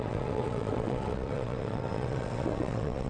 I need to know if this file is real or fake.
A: fake